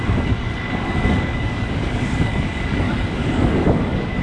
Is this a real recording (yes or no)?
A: no